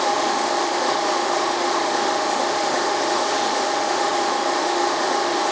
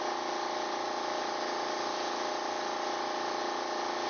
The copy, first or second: first